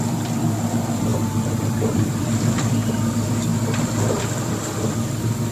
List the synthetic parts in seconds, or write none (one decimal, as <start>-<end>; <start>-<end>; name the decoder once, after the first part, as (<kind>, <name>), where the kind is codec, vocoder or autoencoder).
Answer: none